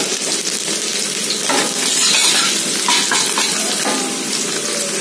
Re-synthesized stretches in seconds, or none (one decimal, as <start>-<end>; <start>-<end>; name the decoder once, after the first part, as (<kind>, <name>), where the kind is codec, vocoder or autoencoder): none